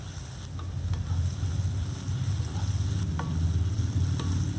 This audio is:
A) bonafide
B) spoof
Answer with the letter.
A